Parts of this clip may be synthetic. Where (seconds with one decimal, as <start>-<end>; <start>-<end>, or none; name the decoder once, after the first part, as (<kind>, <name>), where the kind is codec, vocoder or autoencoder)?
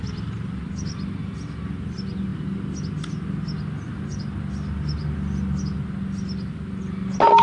none